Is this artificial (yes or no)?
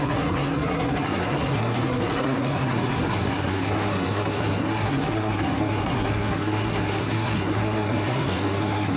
yes